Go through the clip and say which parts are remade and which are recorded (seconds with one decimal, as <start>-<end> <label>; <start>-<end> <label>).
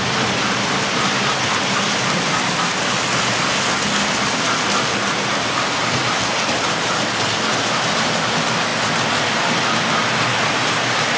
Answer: 0.0-11.2 recorded